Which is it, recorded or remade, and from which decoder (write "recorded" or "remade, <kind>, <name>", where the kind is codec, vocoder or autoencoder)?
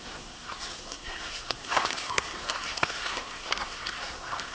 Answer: remade, codec, SNAC